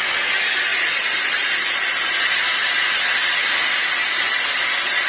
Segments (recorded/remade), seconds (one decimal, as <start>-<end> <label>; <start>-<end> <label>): 0.0-5.1 recorded